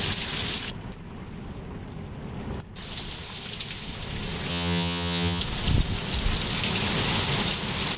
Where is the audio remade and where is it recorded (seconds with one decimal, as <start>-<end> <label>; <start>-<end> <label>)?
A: 0.0-4.5 recorded; 4.5-5.4 remade; 5.4-8.0 recorded